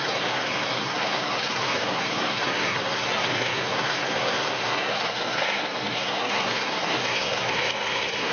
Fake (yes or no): yes